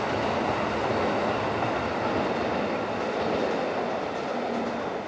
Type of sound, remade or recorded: recorded